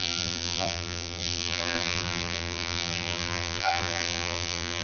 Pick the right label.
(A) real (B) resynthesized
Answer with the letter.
B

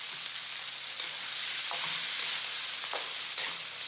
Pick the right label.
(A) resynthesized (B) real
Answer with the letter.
B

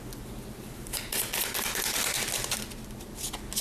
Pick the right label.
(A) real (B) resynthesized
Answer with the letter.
A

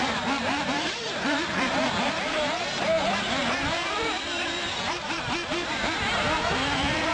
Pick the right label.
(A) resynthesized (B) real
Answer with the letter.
A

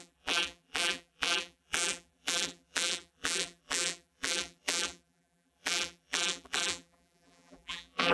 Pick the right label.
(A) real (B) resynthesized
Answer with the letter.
B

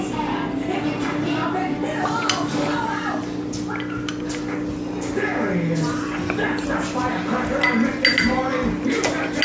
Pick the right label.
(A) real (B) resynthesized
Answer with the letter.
A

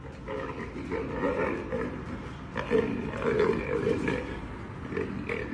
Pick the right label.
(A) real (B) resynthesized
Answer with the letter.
A